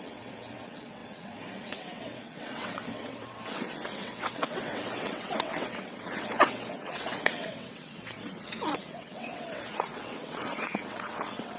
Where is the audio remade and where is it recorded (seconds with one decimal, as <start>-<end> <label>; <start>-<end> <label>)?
0.0-11.6 remade

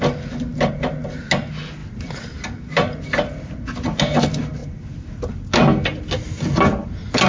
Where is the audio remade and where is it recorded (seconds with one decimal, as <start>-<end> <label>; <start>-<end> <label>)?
0.0-7.3 recorded

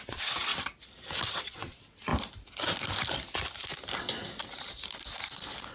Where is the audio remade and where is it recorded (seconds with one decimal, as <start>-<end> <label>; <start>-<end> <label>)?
0.0-0.5 remade; 0.5-1.4 recorded; 1.4-2.1 remade; 2.1-5.7 recorded

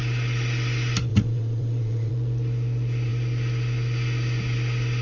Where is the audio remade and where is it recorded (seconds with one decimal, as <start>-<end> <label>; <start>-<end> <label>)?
0.0-1.1 recorded; 1.1-2.1 remade; 2.1-5.0 recorded